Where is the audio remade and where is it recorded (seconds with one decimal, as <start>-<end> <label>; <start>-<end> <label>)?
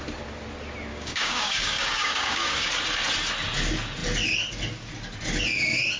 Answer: 0.0-0.9 recorded; 0.9-2.7 remade; 2.7-6.0 recorded